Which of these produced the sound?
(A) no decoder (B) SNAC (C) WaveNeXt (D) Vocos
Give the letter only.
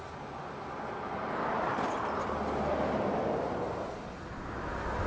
A